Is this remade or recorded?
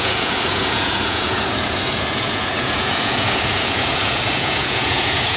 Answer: remade